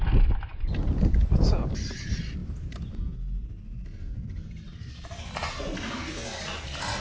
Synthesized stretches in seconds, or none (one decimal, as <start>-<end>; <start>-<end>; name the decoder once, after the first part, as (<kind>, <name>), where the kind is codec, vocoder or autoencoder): none